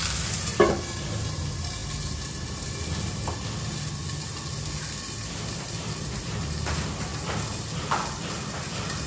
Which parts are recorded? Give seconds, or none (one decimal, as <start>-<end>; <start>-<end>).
0.0-9.1